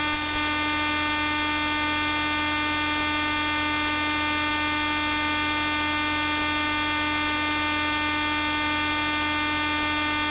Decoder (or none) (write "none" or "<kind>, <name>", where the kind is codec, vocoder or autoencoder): none